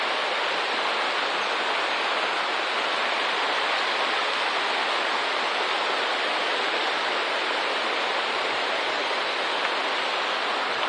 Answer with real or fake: real